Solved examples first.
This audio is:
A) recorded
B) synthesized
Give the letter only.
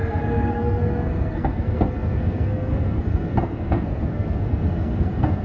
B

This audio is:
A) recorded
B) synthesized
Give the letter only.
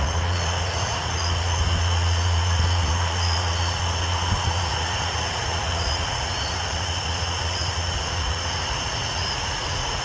B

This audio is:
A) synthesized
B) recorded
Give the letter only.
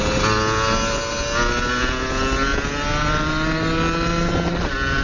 B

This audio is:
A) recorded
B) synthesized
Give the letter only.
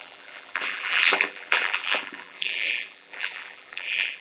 B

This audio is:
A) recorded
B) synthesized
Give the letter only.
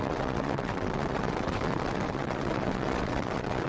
B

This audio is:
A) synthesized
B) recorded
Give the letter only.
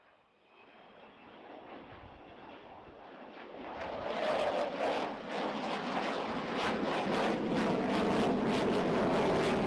B